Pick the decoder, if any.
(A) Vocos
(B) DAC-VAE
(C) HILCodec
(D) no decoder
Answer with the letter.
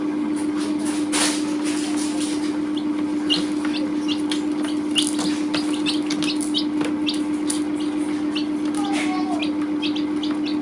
D